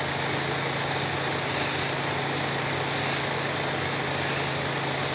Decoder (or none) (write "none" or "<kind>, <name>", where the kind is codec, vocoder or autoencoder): none